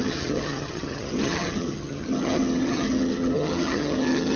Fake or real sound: fake